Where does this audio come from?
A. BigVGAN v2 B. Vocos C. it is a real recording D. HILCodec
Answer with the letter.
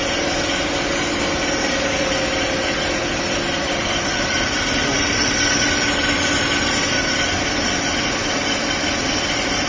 C